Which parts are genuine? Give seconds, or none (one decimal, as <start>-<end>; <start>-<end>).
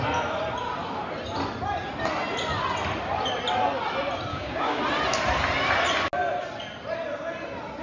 0.0-4.3; 4.8-7.8